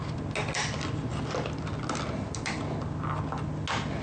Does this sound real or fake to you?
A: real